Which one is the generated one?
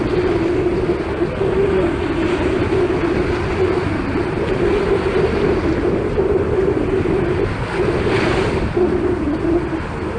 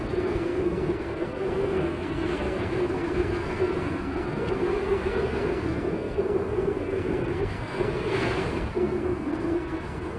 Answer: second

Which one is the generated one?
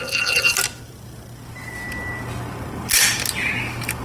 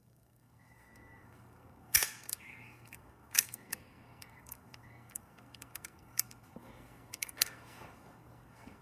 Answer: second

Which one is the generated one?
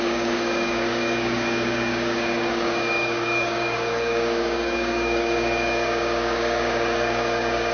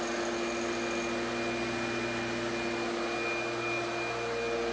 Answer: first